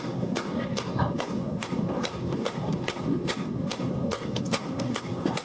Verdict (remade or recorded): remade